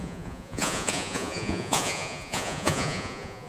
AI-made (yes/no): yes